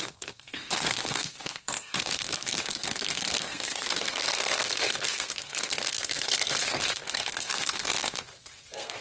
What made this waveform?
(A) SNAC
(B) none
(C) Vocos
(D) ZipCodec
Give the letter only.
A